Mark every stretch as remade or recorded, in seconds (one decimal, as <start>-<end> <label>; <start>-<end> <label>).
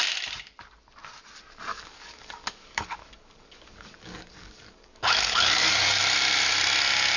0.0-1.7 recorded; 1.7-6.0 remade; 6.0-7.2 recorded